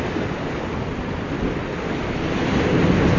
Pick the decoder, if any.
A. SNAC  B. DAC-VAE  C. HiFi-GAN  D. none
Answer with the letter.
D